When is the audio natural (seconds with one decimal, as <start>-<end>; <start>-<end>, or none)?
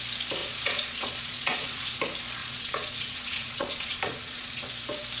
0.0-0.4; 2.0-2.4; 4.7-5.2